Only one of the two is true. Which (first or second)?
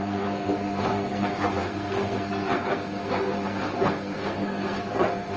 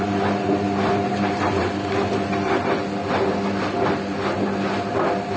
second